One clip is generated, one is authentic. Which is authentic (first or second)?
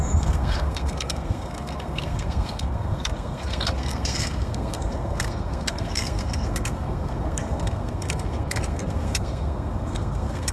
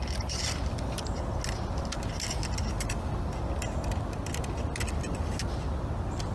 second